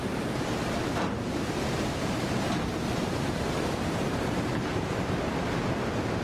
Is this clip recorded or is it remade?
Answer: remade